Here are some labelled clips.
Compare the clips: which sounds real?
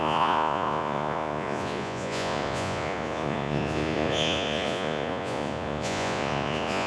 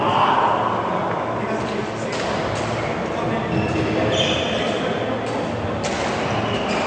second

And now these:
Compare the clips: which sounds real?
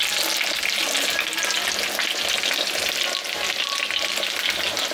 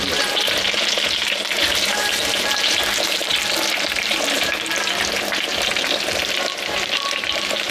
first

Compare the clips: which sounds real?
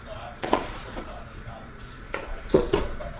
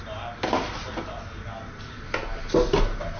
second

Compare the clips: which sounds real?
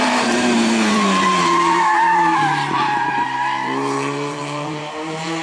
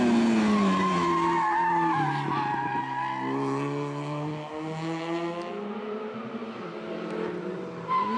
second